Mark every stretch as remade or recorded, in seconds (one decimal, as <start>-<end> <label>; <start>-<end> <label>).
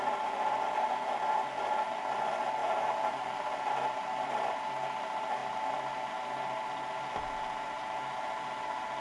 0.0-2.6 recorded; 2.6-3.7 remade; 3.7-9.0 recorded